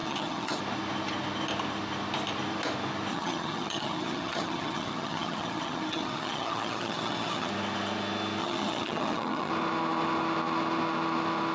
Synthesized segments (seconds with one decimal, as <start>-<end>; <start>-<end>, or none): 0.0-0.6; 3.1-7.5; 8.4-9.5